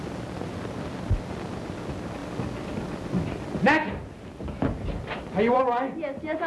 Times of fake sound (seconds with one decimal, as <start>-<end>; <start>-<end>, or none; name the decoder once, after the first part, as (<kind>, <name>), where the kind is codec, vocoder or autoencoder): none